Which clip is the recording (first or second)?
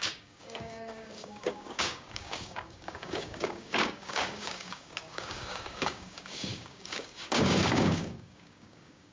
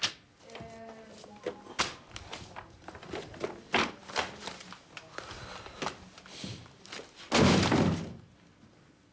second